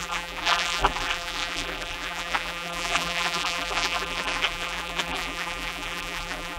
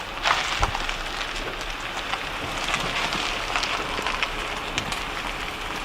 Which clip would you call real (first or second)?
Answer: second